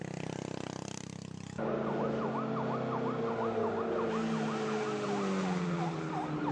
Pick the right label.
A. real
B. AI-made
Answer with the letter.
A